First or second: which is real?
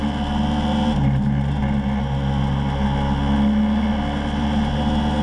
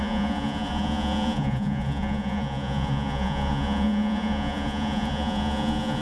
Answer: first